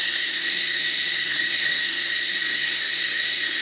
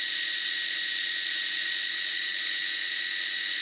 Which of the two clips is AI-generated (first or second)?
first